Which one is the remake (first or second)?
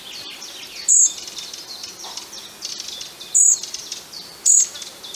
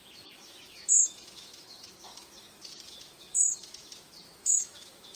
second